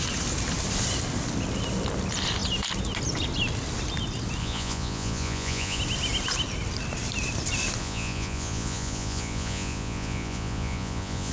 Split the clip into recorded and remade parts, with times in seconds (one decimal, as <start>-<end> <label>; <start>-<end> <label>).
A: 0.0-4.4 recorded; 4.4-5.8 remade; 5.8-7.8 recorded; 7.8-11.3 remade